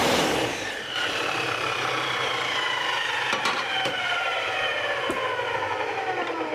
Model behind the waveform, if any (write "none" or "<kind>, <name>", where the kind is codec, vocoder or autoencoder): vocoder, BigVGAN v2